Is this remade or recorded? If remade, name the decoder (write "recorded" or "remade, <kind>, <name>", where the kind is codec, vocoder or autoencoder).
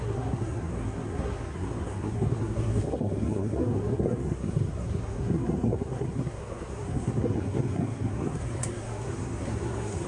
remade, codec, SNAC